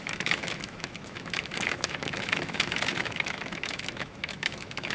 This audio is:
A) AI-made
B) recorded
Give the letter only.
A